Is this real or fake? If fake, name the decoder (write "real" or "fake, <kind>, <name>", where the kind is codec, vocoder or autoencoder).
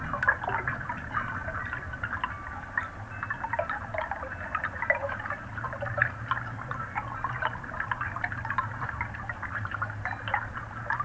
real